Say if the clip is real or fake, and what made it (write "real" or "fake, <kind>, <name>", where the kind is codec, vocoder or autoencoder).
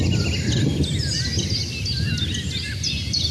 real